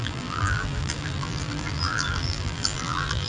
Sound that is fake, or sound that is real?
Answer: fake